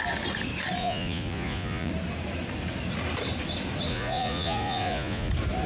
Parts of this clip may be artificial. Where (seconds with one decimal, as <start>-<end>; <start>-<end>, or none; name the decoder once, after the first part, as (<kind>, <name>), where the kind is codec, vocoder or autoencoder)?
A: 0.8-1.9 (vocoder, Vocos); 3.9-5.3

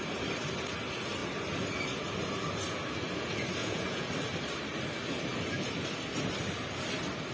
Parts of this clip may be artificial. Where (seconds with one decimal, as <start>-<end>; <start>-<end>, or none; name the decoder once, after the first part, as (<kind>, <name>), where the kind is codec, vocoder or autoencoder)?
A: 3.6-4.1 (vocoder, Vocos)

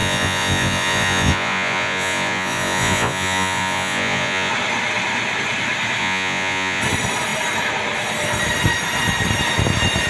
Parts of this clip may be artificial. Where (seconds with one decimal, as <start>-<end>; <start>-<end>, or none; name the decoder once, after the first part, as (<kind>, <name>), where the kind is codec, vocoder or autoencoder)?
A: 0.0-4.5 (vocoder, Vocos); 6.0-6.8

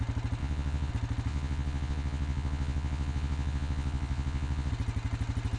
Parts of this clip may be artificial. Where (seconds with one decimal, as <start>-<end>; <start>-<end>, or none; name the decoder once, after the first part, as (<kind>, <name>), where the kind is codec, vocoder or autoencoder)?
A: 0.4-0.9 (vocoder, Vocos); 1.3-4.7

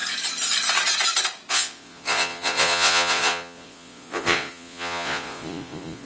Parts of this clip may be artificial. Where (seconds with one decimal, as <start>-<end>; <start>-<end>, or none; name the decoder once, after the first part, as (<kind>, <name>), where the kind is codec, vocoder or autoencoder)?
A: 1.5-6.1 (vocoder, Vocos)

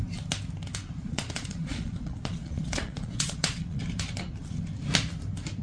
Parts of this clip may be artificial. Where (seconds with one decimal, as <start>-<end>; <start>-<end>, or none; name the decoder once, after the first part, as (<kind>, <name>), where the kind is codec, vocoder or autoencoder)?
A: 1.0-3.8 (vocoder, Vocos)

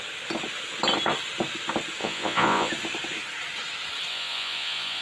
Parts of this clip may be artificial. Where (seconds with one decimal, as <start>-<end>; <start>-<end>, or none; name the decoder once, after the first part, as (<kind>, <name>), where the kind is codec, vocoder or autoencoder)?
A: 2.0-2.7 (vocoder, Vocos); 4.1-5.0